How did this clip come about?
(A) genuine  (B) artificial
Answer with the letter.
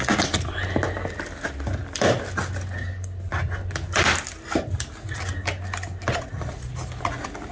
A